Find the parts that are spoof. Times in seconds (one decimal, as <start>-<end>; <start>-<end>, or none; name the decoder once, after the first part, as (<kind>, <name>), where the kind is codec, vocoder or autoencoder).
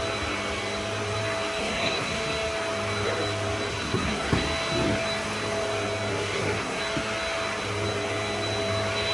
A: 1.6-2.2 (codec, SNAC); 3.7-4.4; 6.1-6.8